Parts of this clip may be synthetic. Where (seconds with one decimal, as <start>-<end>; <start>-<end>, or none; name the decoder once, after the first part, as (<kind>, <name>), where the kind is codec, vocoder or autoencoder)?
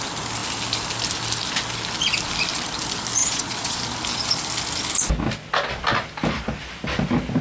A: 3.2-3.8 (vocoder, Vocos)